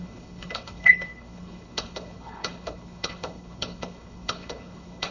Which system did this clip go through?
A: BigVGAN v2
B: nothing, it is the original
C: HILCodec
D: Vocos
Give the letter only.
C